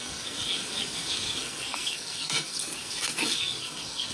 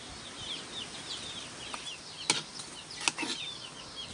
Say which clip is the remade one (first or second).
first